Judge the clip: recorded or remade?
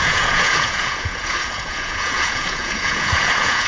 remade